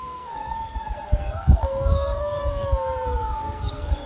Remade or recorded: remade